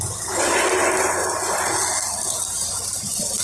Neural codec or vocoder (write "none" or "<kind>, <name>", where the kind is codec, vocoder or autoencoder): none